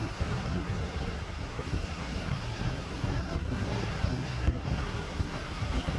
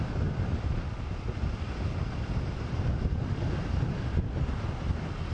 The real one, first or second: second